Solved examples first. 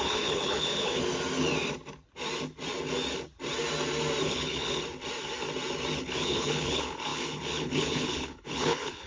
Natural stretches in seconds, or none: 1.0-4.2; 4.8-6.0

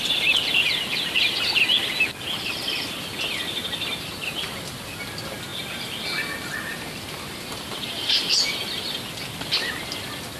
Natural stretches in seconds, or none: 0.0-10.4

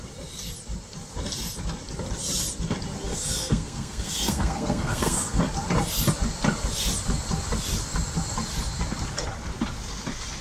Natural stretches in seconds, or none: 0.0-3.1; 5.4-10.4

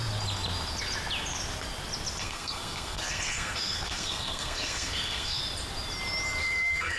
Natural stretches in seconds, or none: 0.0-2.2; 5.4-6.4

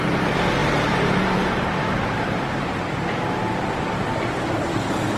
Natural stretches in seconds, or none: 0.0-0.6; 2.8-5.2

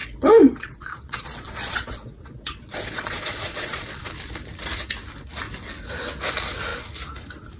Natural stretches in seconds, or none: 4.1-7.6